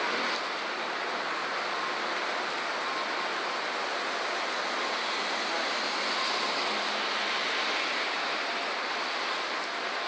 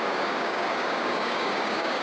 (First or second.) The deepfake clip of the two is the second